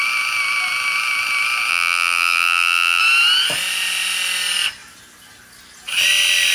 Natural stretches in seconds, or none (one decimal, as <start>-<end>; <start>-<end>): 0.0-1.7; 3.0-6.5

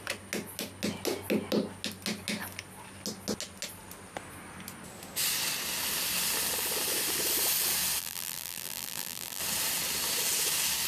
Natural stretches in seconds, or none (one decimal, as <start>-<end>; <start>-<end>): 0.0-8.0; 9.4-10.9

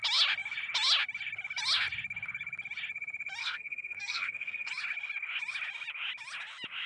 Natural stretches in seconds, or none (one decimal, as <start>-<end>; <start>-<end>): 0.0-3.4; 4.7-6.9

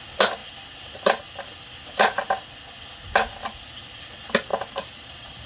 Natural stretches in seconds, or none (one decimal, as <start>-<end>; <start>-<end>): 0.0-0.4; 2.3-4.5

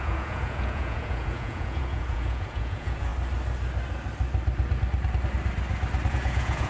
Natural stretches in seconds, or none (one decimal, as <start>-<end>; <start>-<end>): 3.1-6.1

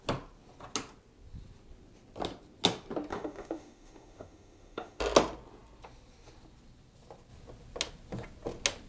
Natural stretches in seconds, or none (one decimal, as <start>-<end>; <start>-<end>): 0.0-3.1; 5.0-8.9